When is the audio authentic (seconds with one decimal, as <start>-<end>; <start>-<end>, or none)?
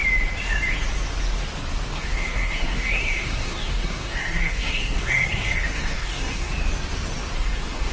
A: 0.0-2.0; 6.5-7.4